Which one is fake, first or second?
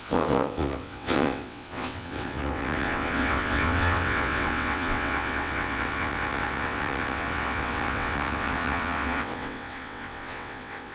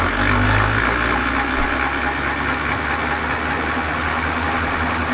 first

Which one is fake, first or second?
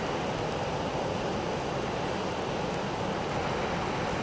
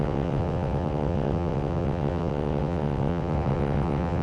second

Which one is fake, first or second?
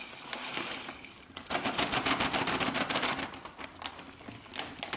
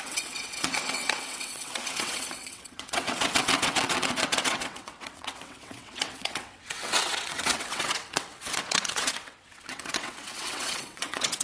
second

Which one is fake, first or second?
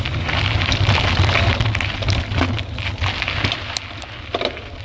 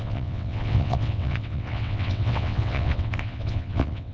second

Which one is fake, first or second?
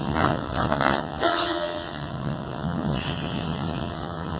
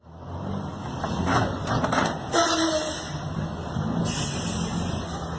first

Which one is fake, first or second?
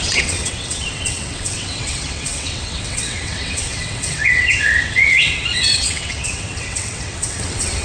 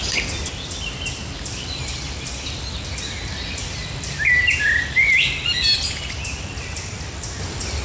first